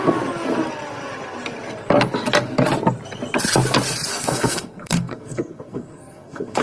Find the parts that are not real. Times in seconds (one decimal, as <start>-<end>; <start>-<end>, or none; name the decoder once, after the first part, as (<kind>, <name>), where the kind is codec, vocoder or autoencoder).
4.1-6.6 (codec, SNAC)